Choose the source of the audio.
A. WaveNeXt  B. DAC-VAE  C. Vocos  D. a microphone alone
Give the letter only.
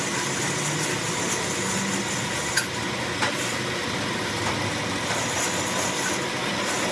D